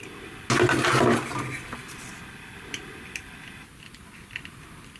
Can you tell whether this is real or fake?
real